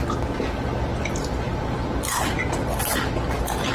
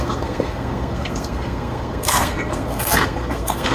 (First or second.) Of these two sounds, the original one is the first